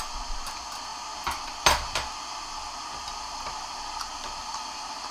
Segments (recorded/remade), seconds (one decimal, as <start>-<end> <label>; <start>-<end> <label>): 0.0-5.1 recorded